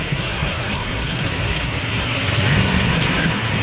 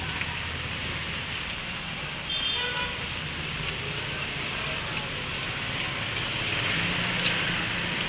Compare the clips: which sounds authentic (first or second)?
second